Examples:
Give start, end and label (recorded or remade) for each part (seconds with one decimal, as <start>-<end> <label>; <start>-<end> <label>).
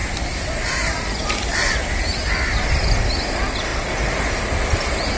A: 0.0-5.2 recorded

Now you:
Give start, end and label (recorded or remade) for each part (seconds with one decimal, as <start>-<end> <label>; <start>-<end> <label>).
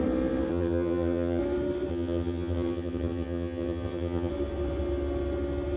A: 0.0-0.5 recorded; 0.5-1.4 remade; 1.4-1.9 recorded; 1.9-4.3 remade; 4.3-5.8 recorded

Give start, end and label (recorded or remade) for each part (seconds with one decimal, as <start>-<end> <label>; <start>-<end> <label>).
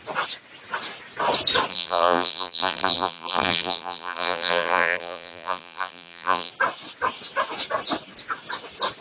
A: 0.0-1.7 recorded; 1.7-6.5 remade; 6.5-9.0 recorded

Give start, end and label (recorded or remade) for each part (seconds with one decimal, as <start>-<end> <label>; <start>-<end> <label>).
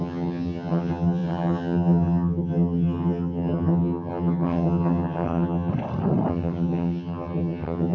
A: 0.0-5.7 remade; 5.7-6.3 recorded; 6.3-7.9 remade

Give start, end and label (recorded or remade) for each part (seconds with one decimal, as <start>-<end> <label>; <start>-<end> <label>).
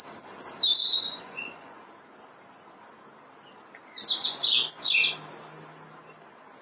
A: 0.0-0.8 recorded; 0.8-1.8 remade; 1.8-4.2 recorded; 4.2-4.9 remade; 4.9-6.6 recorded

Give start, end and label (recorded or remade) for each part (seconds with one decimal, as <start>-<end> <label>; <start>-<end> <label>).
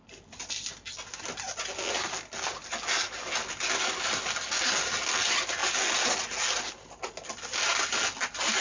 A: 0.0-8.6 recorded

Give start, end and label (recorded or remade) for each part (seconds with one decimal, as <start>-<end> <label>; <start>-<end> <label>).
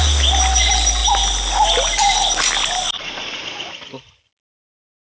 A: 0.0-5.0 recorded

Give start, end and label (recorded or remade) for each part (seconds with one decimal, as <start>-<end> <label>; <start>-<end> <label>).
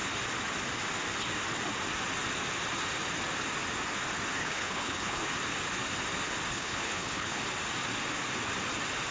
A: 0.0-4.4 recorded; 4.4-5.3 remade; 5.3-6.5 recorded; 6.5-7.4 remade; 7.4-9.1 recorded